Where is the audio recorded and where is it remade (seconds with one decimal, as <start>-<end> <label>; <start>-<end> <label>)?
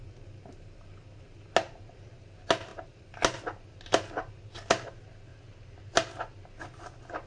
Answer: 0.0-7.3 recorded